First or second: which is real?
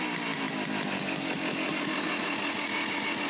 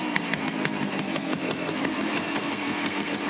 first